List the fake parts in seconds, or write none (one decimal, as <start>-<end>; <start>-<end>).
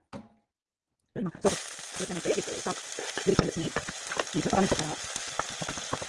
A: none